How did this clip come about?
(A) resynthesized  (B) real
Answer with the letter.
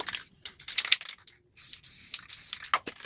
B